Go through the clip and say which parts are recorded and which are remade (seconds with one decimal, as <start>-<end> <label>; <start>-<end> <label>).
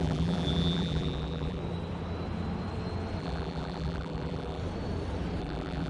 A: 0.0-1.6 remade; 1.6-3.2 recorded; 3.2-4.6 remade; 4.6-5.4 recorded; 5.4-5.9 remade